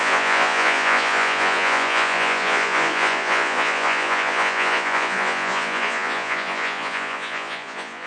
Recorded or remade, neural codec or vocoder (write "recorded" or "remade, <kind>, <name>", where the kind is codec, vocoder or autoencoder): remade, vocoder, Vocos